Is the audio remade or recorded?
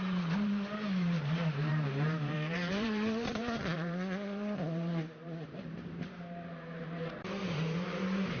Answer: remade